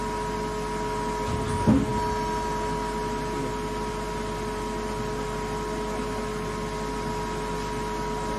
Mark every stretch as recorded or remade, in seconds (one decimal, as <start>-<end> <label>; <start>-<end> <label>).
0.0-8.4 recorded